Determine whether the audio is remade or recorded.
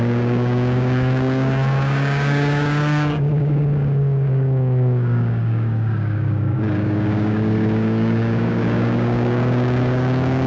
remade